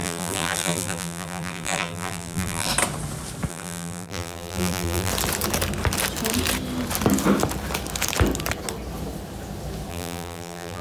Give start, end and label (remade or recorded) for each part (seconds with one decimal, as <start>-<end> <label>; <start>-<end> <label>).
0.0-2.7 remade; 2.7-3.5 recorded; 3.5-5.1 remade; 5.1-9.9 recorded; 9.9-10.8 remade